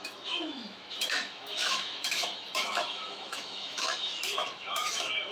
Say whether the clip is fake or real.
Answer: fake